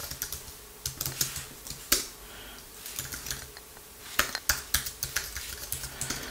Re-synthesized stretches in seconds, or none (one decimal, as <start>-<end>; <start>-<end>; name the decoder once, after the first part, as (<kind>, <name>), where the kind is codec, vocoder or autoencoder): none